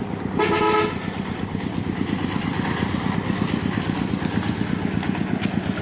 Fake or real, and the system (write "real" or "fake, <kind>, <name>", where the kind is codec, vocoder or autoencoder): real